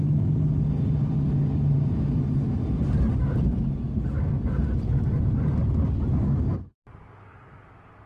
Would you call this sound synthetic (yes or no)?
no